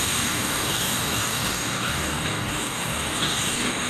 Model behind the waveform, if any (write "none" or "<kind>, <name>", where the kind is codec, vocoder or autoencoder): codec, DAC